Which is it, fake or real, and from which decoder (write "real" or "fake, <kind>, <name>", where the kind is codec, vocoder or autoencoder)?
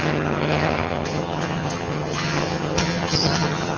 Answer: fake, vocoder, HiFi-GAN